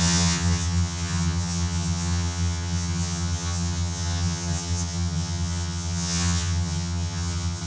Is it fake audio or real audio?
fake